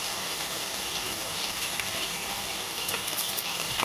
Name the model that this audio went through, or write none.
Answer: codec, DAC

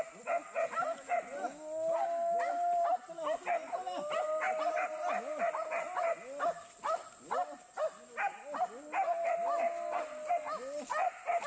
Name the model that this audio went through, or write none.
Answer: none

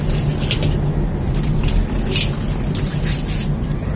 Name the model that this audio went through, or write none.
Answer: none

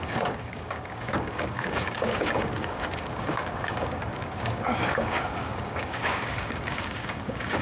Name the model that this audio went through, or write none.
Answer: codec, DAC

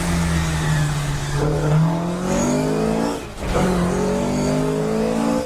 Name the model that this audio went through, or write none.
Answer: codec, DAC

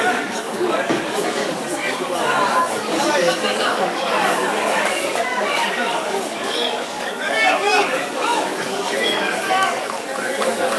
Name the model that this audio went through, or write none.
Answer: codec, DAC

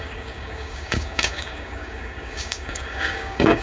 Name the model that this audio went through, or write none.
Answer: codec, DAC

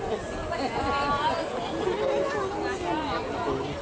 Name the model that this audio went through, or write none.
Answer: none